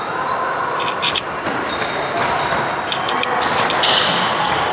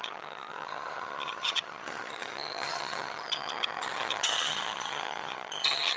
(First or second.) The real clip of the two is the first